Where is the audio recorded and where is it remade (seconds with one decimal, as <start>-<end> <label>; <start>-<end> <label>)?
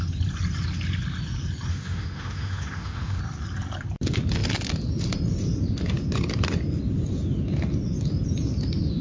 0.0-1.7 recorded; 1.7-3.2 remade; 3.2-9.0 recorded